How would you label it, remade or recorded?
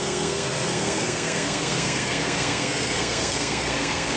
remade